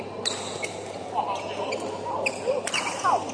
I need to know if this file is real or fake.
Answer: real